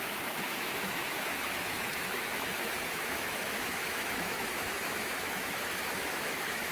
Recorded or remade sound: remade